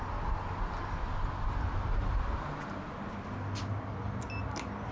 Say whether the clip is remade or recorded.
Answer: recorded